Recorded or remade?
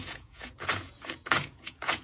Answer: remade